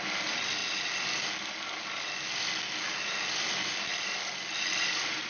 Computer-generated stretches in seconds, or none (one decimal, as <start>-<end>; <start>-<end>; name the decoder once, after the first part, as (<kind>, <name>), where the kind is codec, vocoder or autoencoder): none